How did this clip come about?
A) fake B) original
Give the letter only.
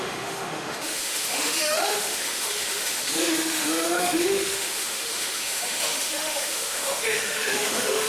A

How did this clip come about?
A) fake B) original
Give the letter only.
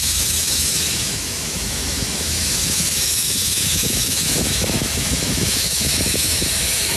A